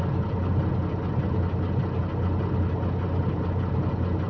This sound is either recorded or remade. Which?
recorded